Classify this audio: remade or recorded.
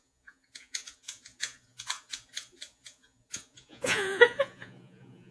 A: remade